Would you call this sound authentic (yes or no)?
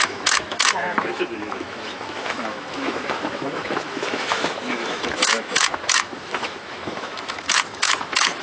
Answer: no